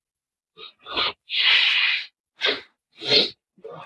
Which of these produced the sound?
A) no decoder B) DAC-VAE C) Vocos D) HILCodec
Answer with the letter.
A